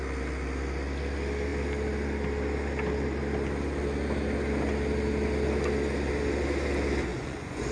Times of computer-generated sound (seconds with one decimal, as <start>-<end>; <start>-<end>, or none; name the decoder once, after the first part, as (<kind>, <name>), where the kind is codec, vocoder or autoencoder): 7.1-7.7 (vocoder, Vocos)